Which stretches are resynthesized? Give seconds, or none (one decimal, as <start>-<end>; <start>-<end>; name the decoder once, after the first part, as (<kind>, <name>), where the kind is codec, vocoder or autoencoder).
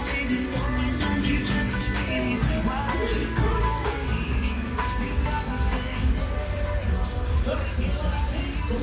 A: 1.4-2.3 (codec, DAC); 3.2-6.1